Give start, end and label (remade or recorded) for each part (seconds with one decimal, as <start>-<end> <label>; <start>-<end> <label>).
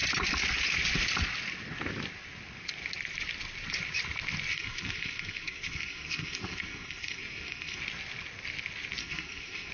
0.0-4.5 recorded; 4.5-7.8 remade; 7.8-9.0 recorded; 9.0-9.7 remade